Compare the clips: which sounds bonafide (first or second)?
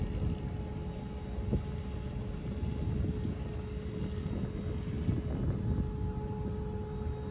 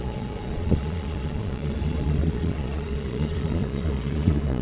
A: first